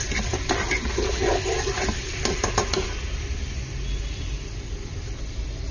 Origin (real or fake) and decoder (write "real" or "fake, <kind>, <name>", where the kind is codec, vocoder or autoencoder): real